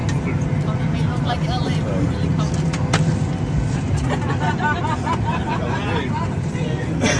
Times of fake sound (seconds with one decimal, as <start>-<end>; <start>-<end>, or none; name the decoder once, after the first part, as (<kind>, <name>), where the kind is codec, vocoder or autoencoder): none

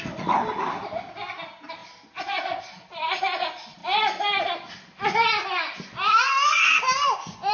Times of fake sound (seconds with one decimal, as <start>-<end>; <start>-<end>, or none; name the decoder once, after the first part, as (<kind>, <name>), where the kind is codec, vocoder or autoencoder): none

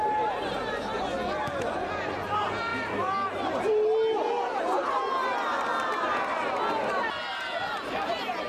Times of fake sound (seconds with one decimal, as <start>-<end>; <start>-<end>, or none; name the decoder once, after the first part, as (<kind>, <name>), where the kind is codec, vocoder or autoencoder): none

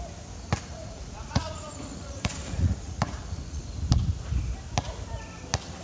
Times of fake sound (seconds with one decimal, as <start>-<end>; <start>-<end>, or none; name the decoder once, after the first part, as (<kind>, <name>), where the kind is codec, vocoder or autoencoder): 0.7-3.6 (vocoder, Vocos)

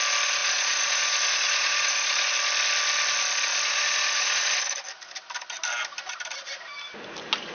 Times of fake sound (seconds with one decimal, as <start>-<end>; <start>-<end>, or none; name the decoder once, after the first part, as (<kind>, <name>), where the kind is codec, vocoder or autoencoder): 0.4-2.3 (vocoder, Vocos); 3.5-4.6

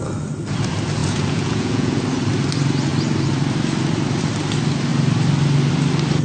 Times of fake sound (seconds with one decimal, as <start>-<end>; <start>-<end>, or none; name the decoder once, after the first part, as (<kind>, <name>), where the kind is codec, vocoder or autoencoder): 1.0-2.0 (vocoder, Vocos)